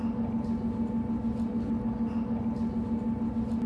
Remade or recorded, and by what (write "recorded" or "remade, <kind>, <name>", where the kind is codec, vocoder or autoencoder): recorded